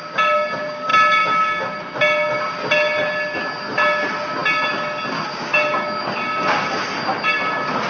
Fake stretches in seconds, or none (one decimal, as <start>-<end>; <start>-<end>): none